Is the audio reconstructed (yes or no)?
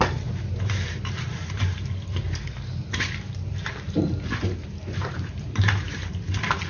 yes